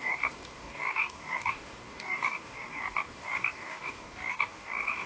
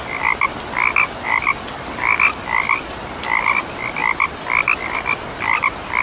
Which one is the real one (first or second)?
second